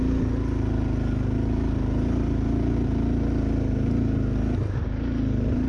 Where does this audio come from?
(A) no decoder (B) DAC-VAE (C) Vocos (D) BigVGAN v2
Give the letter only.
A